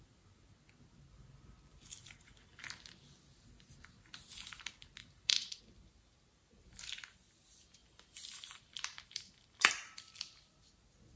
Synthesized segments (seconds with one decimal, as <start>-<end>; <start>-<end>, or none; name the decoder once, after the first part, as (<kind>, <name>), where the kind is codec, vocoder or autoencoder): 5.0-5.6 (vocoder, BigVGAN v2); 7.8-9.7